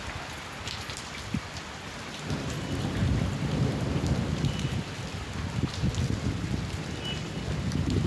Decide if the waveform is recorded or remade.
remade